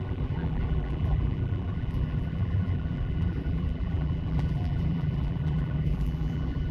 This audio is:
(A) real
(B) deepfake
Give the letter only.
B